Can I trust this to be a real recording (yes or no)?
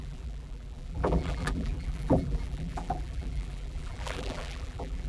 no